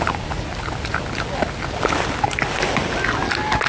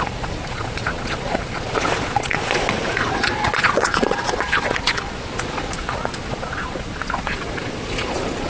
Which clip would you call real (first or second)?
first